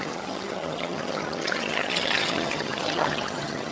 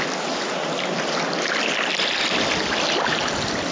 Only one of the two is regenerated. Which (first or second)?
first